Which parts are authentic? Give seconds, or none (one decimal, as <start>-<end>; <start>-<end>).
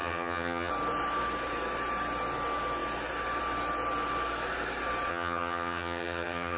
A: 0.7-5.1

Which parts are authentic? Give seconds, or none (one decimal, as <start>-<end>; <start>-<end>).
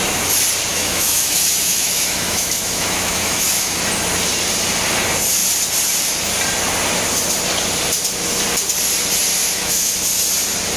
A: 0.0-0.7; 3.8-9.4; 9.9-10.8